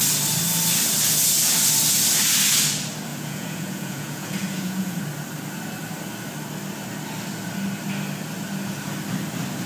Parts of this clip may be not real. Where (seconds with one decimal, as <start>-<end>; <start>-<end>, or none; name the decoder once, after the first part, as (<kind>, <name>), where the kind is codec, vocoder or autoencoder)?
3.1-5.0 (vocoder, Vocos)